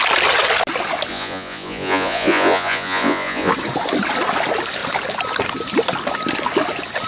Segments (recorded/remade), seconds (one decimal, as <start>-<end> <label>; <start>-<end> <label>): 0.0-1.1 recorded; 1.1-3.5 remade; 3.5-7.1 recorded